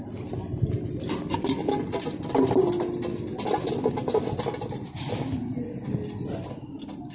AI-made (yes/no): no